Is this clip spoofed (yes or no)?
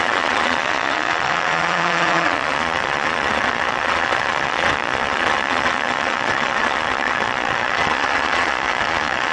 yes